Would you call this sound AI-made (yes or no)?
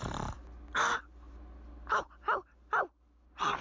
no